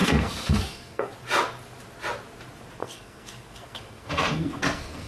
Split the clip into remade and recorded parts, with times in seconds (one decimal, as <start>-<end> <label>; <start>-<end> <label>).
0.0-1.1 remade; 1.1-2.8 recorded; 2.8-5.1 remade